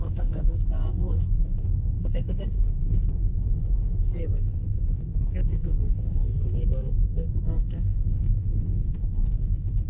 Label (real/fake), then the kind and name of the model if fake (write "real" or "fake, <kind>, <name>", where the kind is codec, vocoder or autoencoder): fake, codec, SNAC